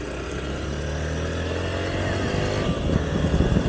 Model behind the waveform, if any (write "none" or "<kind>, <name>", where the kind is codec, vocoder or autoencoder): none